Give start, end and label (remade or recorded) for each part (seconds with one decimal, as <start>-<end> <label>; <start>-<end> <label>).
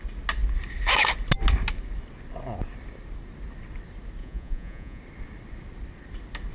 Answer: 0.0-4.2 recorded; 4.2-5.0 remade; 5.0-6.5 recorded